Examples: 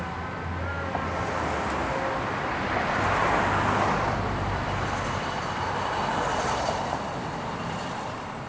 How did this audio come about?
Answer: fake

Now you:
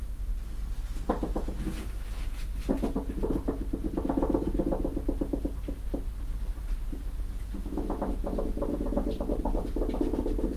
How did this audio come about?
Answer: real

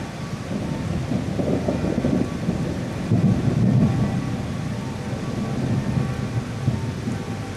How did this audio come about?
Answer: real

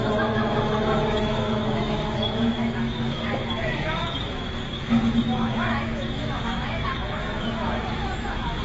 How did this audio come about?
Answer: fake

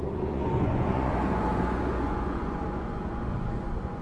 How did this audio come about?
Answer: fake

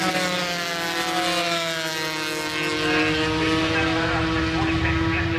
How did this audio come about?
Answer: real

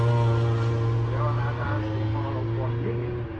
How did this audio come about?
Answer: real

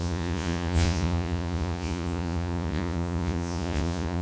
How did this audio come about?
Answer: fake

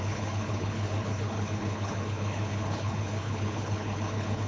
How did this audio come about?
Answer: fake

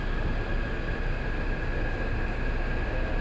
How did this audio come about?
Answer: real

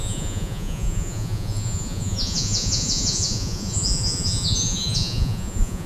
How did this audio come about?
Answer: fake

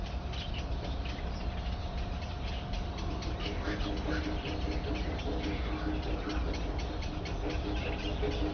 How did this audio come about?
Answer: real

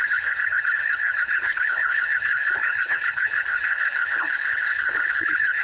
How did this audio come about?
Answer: fake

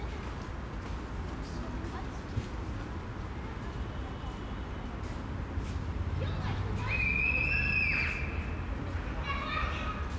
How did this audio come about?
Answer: real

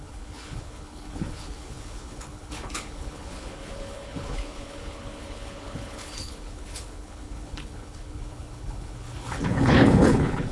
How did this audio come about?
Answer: fake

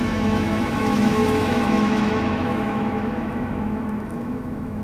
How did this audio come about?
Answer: fake